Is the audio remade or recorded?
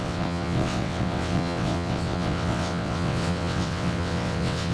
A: remade